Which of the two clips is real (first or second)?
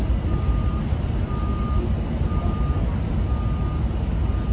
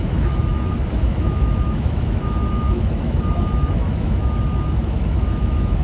first